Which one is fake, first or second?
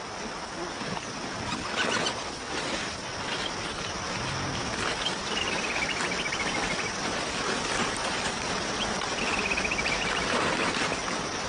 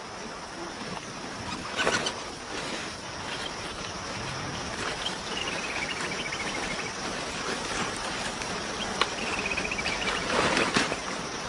second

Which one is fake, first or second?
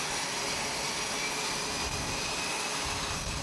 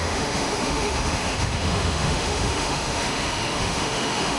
second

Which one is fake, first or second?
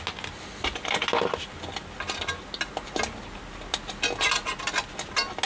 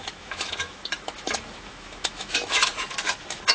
second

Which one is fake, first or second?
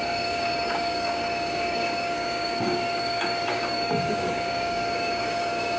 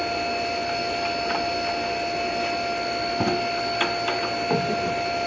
first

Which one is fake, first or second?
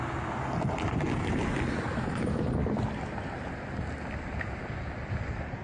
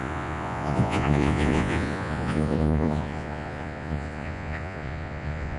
second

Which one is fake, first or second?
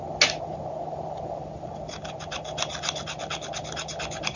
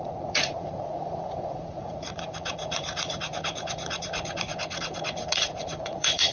second